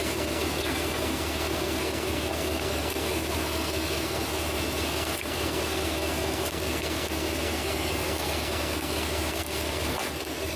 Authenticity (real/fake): fake